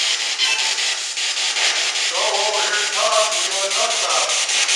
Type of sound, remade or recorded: recorded